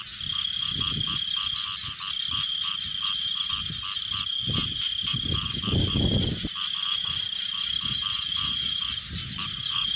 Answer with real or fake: real